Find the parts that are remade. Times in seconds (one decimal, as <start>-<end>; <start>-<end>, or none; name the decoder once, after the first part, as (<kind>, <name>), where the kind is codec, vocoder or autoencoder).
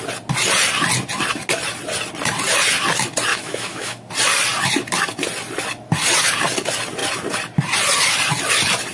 3.3-4.1 (autoencoder, DAC-VAE)